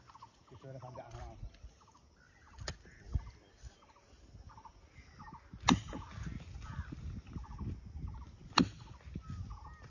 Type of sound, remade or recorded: recorded